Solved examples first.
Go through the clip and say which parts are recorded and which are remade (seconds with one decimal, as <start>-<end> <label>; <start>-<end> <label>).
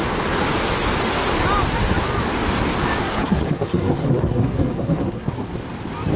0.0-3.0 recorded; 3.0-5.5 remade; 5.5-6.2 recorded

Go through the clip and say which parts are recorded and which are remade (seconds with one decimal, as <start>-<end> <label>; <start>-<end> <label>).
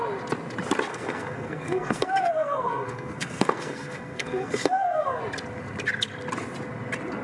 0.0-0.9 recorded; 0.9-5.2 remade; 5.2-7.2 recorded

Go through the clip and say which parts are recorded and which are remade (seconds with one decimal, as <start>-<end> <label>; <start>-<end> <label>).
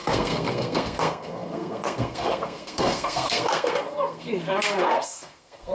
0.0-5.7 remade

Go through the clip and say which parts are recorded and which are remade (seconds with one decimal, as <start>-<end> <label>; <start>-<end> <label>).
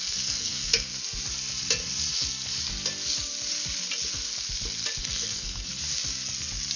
0.0-0.9 remade; 0.9-5.0 recorded; 5.0-5.7 remade; 5.7-6.8 recorded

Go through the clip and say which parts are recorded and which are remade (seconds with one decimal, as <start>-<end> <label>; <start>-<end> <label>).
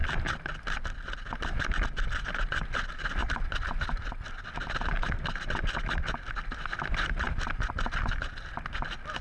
0.0-9.2 recorded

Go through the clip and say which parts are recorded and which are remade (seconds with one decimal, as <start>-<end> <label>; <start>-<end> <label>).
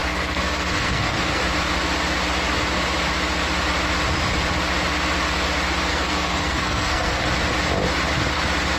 0.0-1.4 remade; 1.4-5.9 recorded; 5.9-7.2 remade; 7.2-8.8 recorded